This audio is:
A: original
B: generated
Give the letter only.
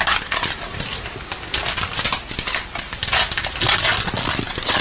A